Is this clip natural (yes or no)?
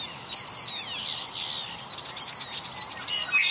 yes